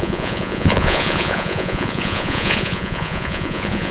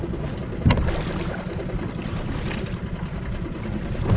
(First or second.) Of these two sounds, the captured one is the second